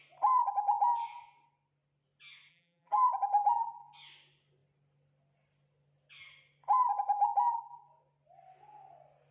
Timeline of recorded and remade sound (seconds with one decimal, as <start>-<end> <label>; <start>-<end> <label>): 0.0-2.5 recorded; 2.5-3.1 remade; 3.1-9.3 recorded